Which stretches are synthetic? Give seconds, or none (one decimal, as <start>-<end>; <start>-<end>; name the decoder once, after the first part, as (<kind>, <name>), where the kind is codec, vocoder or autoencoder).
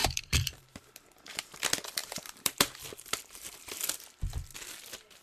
0.0-0.7 (vocoder, BigVGAN v2); 2.0-3.7